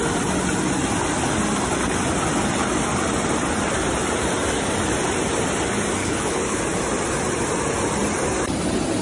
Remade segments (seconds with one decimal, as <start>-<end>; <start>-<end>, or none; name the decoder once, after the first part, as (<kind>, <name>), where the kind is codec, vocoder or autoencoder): 6.0-6.6 (codec, HILCodec)